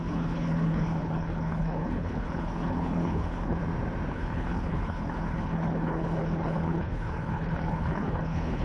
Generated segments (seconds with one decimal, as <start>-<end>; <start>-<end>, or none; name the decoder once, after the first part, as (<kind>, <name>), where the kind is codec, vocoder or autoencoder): 0.0-3.6 (codec, HILCodec); 4.1-8.6